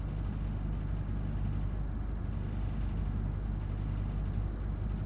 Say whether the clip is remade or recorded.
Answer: recorded